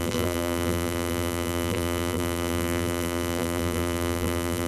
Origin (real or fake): fake